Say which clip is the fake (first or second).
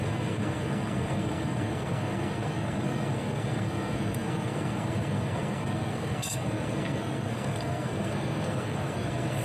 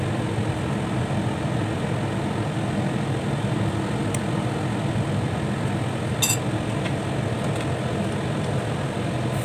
first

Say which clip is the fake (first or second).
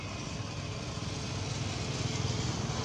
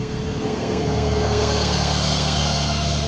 second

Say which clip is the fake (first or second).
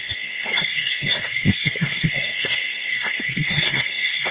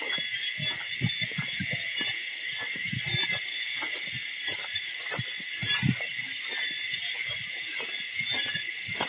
first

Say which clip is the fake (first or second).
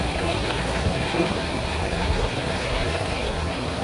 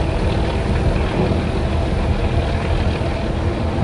first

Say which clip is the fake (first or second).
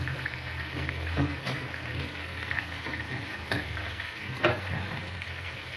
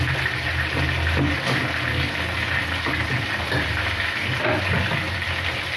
first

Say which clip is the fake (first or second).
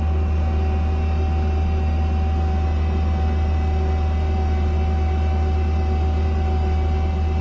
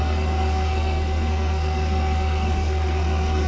second